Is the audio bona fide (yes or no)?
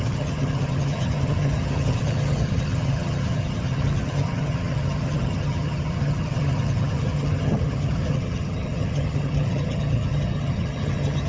no